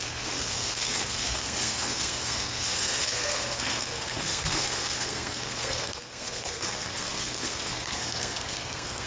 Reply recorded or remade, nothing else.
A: remade